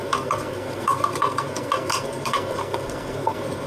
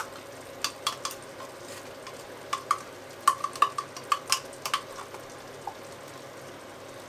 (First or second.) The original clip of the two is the second